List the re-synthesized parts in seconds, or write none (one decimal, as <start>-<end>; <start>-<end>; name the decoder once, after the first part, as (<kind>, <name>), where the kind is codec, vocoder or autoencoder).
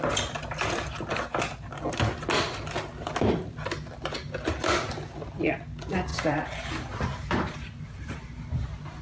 6.1-8.4 (vocoder, BigVGAN v2)